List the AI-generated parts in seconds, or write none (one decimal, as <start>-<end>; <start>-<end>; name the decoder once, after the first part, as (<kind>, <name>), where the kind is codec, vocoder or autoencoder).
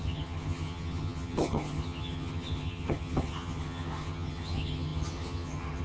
0.0-5.8 (vocoder, HiFi-GAN)